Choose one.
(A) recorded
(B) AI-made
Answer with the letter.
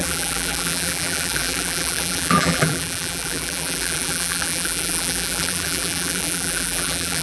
B